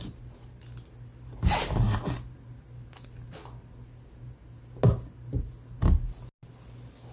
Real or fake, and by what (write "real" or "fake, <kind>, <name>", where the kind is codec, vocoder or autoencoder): real